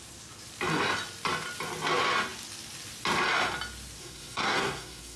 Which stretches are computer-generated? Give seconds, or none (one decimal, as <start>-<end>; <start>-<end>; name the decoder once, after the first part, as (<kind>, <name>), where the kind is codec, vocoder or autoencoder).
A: 4.0-5.2 (codec, SNAC)